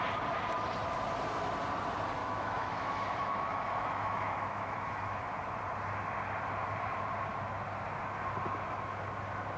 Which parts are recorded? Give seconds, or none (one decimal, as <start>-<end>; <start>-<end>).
0.0-2.2; 5.6-9.6